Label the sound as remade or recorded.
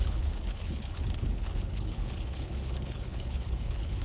remade